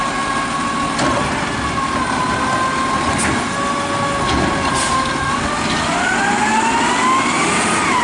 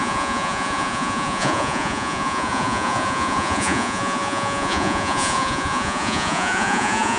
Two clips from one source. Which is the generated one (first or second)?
second